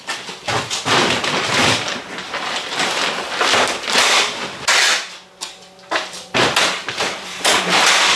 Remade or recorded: recorded